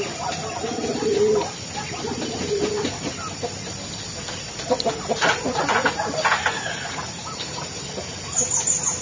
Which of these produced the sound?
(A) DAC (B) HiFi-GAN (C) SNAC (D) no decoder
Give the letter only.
D